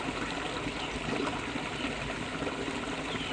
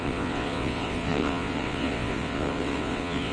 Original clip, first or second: first